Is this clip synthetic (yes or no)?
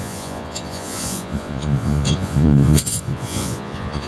yes